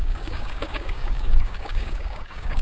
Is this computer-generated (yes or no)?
yes